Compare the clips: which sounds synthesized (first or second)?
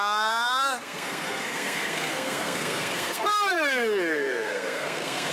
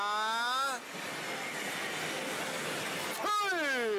first